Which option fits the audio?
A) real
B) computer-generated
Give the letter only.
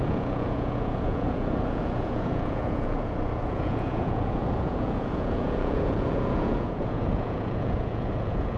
B